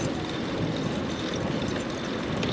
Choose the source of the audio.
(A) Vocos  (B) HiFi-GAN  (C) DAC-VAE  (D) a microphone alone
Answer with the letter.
D